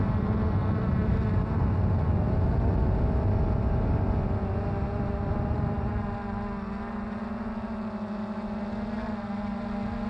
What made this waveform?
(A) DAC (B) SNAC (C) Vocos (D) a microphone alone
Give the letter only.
D